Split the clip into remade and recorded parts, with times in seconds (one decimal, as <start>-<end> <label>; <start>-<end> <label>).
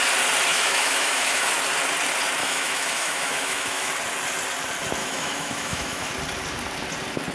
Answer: 0.0-0.5 recorded; 0.5-1.5 remade; 1.5-2.4 recorded; 2.4-3.9 remade; 3.9-5.0 recorded; 5.0-6.1 remade; 6.1-7.3 recorded